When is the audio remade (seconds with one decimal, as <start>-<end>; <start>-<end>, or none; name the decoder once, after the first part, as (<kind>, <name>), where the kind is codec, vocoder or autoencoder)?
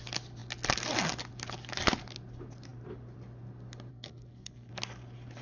3.9-4.7 (codec, SNAC)